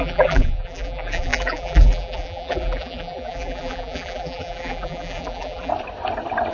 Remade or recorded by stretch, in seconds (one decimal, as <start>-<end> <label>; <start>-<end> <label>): 0.0-5.7 remade; 5.7-6.5 recorded